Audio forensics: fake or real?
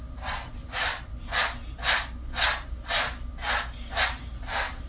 real